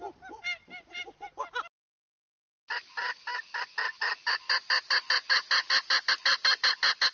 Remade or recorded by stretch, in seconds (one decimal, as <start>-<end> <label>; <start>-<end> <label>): 0.0-7.1 recorded